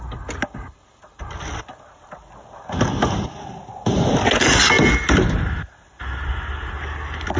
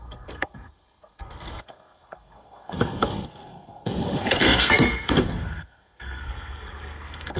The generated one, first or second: second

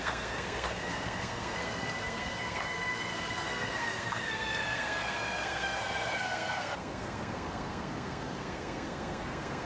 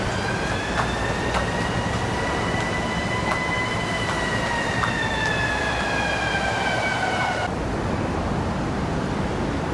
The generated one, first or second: first